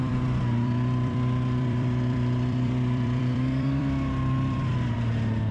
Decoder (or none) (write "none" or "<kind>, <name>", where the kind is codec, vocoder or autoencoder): vocoder, BigVGAN v2